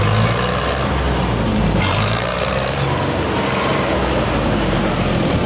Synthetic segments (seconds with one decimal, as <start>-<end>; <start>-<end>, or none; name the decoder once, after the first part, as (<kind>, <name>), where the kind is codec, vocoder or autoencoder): 1.5-4.8 (vocoder, BigVGAN v2)